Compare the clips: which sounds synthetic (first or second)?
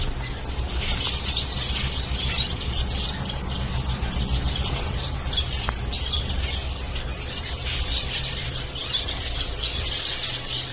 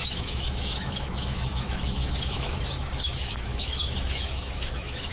second